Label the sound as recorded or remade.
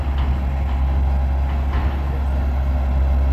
recorded